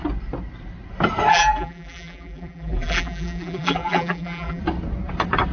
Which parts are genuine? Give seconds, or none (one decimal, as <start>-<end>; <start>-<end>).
0.0-1.3; 4.6-5.5